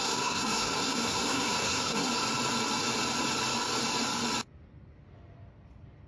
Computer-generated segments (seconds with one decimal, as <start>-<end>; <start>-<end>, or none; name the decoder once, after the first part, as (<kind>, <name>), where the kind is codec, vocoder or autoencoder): 0.0-2.1 (codec, SNAC)